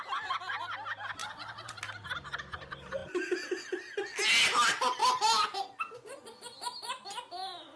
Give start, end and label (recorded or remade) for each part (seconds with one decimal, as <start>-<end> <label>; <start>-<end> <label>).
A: 0.0-1.2 recorded; 1.2-1.8 remade; 1.8-7.8 recorded